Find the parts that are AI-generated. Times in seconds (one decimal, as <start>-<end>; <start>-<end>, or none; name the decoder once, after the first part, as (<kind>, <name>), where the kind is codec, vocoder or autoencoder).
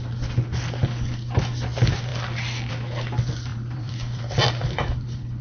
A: 3.5-5.4 (vocoder, BigVGAN v2)